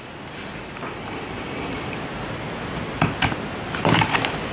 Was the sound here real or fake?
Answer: real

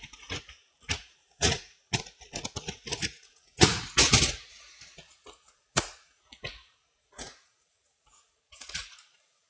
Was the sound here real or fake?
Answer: fake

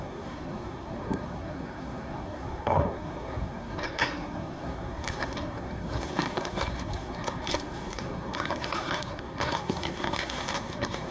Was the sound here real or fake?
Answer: fake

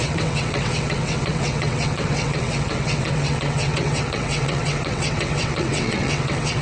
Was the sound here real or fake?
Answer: fake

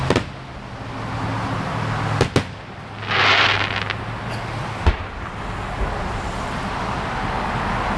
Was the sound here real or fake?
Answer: real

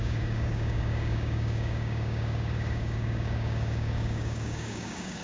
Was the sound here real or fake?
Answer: fake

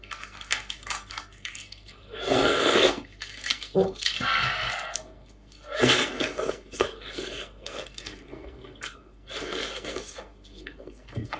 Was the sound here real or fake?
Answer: fake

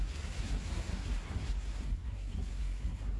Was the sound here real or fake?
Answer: fake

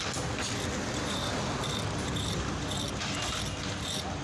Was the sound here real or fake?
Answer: real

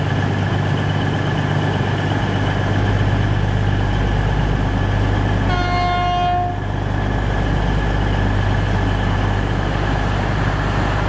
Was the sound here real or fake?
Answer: real